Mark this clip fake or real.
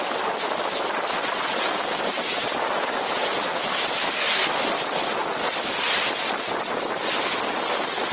real